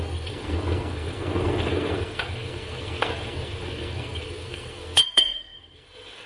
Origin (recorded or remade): remade